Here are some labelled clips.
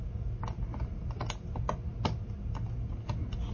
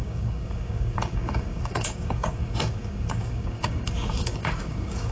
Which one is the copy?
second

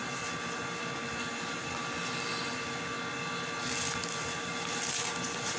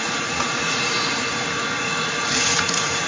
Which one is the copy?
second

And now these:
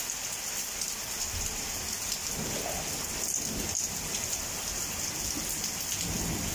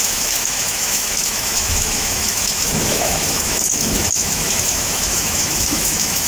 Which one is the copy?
second